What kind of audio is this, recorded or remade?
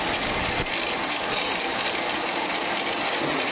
recorded